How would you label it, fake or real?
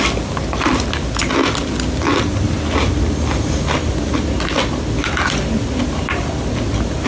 real